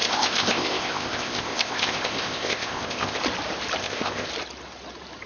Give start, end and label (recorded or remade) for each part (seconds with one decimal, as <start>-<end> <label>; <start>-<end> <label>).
0.0-3.2 remade; 3.2-3.8 recorded; 3.8-4.3 remade; 4.3-5.3 recorded